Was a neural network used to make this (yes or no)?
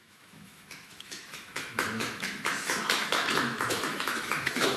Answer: yes